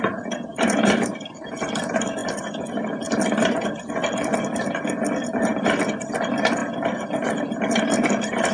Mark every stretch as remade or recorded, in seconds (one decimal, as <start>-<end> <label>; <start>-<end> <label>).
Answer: 0.0-0.5 recorded; 0.5-1.5 remade; 1.5-8.5 recorded

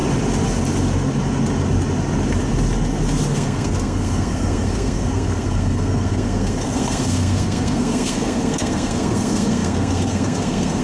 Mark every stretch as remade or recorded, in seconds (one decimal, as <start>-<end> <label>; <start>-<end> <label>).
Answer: 0.0-3.3 recorded; 3.3-10.8 remade

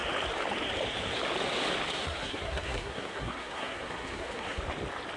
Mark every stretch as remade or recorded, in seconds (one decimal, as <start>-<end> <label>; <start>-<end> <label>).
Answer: 0.0-1.9 recorded; 1.9-4.6 remade; 4.6-5.2 recorded

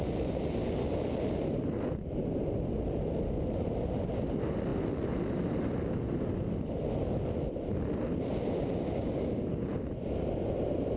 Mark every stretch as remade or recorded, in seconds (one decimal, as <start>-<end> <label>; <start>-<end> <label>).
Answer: 0.0-11.0 recorded

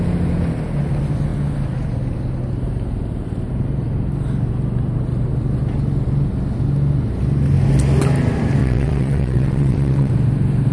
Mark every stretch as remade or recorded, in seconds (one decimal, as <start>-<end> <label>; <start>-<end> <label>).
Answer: 0.0-8.6 recorded; 8.6-10.1 remade; 10.1-10.7 recorded

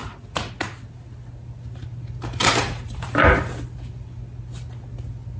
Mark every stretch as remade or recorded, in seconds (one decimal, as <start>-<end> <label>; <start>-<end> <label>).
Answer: 0.0-2.4 recorded; 2.4-3.4 remade; 3.4-5.4 recorded

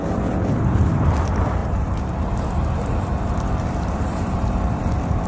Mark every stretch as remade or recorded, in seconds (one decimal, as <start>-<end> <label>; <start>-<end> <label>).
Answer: 0.0-1.6 recorded; 1.6-4.8 remade; 4.8-5.3 recorded

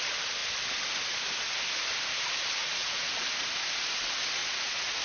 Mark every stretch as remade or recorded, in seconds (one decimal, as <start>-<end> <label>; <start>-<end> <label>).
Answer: 0.0-2.6 recorded; 2.6-3.1 remade; 3.1-4.4 recorded; 4.4-5.0 remade